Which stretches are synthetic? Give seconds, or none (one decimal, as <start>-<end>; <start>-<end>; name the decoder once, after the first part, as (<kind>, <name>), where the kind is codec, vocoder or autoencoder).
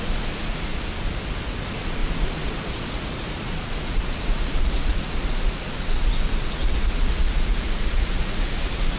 0.0-0.7 (vocoder, Vocos); 1.6-9.0